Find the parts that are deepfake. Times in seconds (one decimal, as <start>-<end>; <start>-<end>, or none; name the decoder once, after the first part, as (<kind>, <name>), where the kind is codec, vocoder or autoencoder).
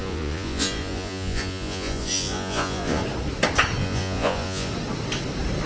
0.0-3.0 (vocoder, Vocos); 3.8-4.7